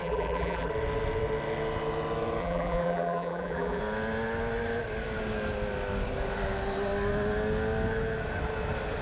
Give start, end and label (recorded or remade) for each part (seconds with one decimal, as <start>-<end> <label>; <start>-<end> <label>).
0.0-0.7 remade; 0.7-2.4 recorded; 2.4-3.8 remade; 3.8-9.0 recorded